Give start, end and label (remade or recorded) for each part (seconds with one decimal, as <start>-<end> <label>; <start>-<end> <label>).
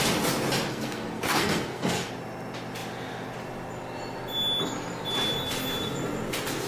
0.0-0.7 recorded; 0.7-2.1 remade; 2.1-6.7 recorded